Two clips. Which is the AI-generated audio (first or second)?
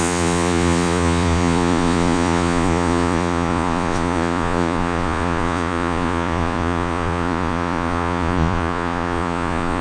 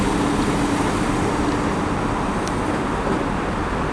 first